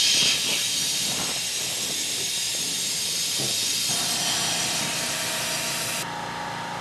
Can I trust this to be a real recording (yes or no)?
yes